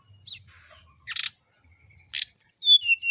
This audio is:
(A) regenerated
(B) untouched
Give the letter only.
B